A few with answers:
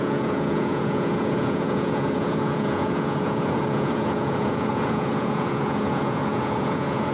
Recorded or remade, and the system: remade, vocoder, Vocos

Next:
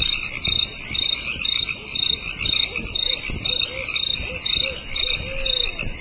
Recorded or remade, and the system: recorded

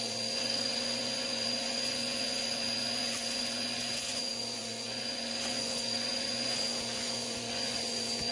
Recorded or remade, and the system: remade, vocoder, Vocos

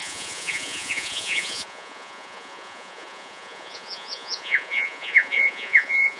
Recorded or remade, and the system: remade, vocoder, Vocos